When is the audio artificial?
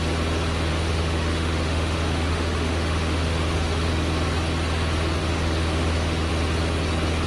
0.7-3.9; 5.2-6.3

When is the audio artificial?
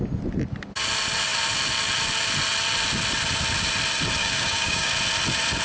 4.2-4.9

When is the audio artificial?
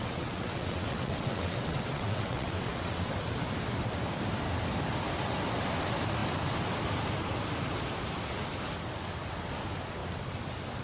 0.0-3.1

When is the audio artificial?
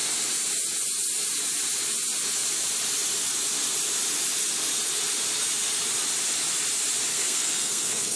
7.1-8.2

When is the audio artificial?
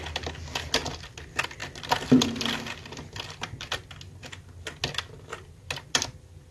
none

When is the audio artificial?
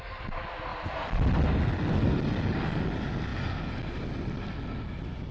none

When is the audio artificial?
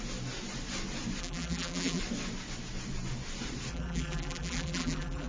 1.2-2.0; 3.7-5.3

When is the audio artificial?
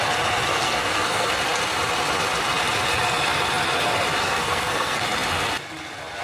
0.5-1.3; 4.2-5.0